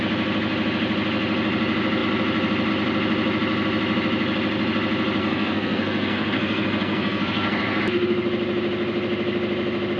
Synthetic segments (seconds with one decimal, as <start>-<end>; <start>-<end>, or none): 5.2-7.8